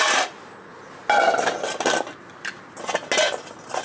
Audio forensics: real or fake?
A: real